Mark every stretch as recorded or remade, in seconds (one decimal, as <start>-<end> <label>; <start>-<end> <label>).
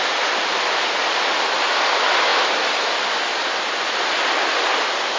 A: 0.0-5.2 recorded